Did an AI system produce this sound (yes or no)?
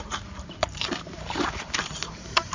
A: yes